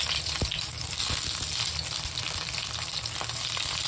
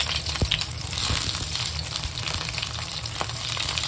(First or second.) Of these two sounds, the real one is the first